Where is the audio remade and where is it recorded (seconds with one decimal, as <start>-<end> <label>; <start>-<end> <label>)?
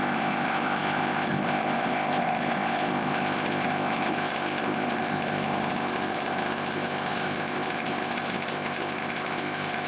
0.0-9.9 remade